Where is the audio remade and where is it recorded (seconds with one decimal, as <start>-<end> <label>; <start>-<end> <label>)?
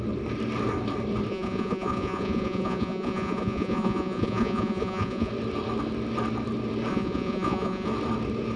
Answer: 0.0-1.3 recorded; 1.3-5.3 remade; 5.3-6.9 recorded; 6.9-7.9 remade; 7.9-8.6 recorded